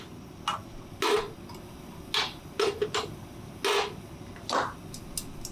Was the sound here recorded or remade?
recorded